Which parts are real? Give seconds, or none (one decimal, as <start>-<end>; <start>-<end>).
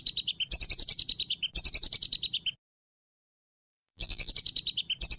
0.0-3.4; 4.3-5.2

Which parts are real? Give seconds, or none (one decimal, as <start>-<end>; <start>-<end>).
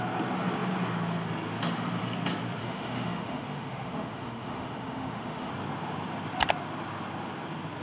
0.0-2.6; 5.5-7.8